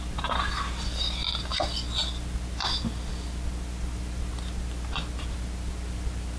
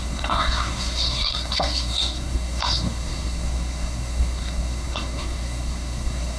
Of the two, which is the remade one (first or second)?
second